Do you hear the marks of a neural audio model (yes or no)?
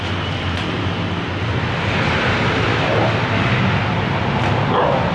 no